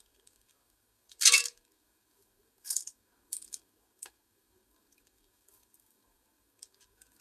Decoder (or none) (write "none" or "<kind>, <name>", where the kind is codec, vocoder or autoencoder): codec, DAC